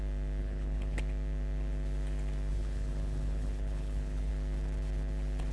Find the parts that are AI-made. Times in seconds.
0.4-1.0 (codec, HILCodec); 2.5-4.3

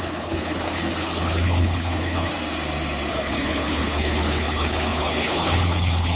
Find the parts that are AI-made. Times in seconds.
0.0-2.3 (codec, HILCodec); 3.1-6.2

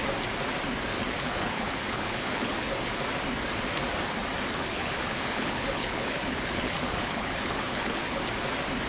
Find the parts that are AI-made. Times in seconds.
0.9-2.9 (codec, HILCodec); 4.5-8.2